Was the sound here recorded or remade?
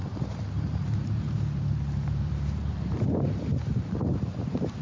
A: remade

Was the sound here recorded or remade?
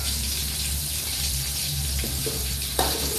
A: remade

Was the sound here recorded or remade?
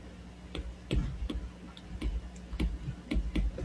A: remade